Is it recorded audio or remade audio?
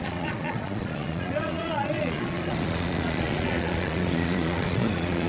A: remade